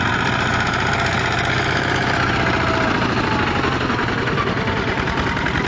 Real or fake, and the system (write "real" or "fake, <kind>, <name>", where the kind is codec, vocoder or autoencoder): fake, vocoder, BigVGAN v2